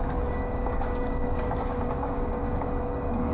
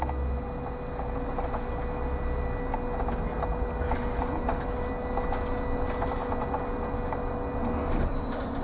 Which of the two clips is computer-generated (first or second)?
first